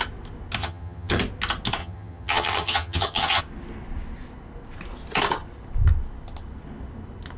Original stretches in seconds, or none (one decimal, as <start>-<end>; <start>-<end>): 0.0-0.6; 1.2-1.8; 3.4-7.4